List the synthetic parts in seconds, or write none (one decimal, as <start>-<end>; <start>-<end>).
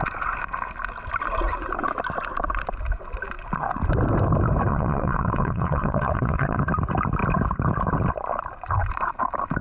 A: 4.7-6.6